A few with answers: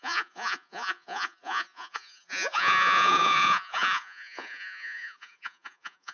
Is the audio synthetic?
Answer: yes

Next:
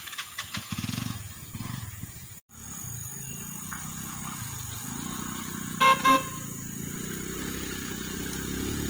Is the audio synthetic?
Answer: yes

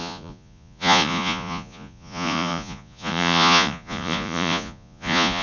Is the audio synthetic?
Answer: yes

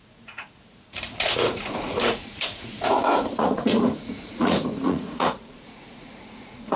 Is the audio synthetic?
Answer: yes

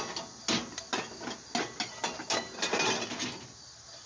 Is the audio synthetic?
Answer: no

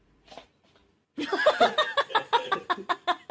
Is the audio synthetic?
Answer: no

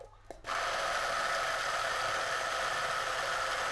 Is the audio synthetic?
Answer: no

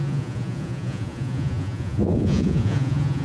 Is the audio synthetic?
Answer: yes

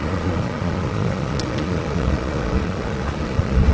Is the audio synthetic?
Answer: yes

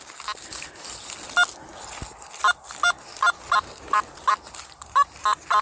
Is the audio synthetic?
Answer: no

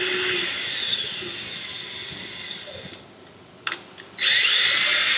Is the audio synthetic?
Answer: no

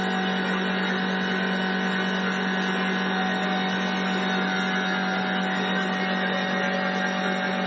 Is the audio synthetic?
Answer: no